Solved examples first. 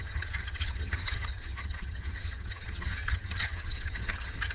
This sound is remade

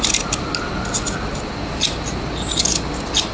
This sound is recorded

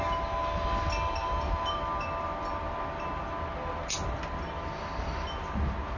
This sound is recorded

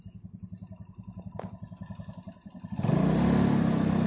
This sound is recorded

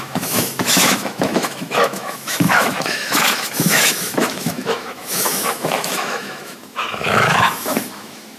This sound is remade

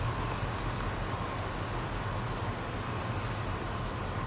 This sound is recorded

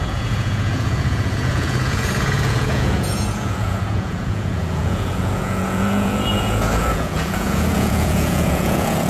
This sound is remade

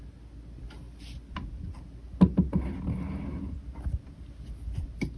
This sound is recorded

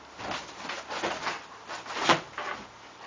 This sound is recorded